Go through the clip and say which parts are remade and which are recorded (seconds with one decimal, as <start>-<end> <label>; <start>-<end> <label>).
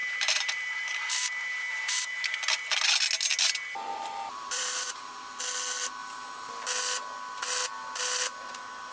0.0-2.1 remade; 2.1-3.9 recorded; 3.9-5.4 remade; 5.4-8.9 recorded